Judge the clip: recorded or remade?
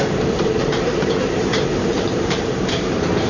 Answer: remade